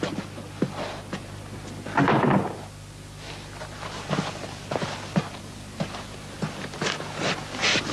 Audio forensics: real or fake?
real